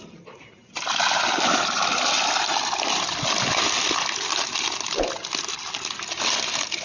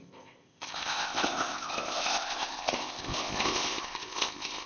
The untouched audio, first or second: first